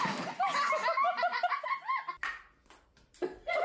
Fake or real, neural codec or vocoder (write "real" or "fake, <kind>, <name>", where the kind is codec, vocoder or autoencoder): real